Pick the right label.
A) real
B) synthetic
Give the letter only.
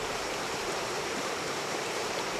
B